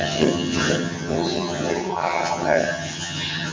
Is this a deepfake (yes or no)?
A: yes